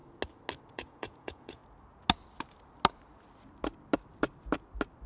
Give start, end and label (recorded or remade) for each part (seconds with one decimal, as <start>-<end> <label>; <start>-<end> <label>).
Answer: 0.0-0.7 recorded; 0.7-1.6 remade; 1.6-5.1 recorded